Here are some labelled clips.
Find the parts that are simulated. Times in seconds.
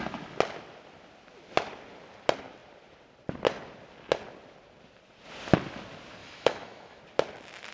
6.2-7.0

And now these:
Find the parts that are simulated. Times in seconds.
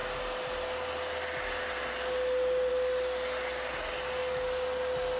none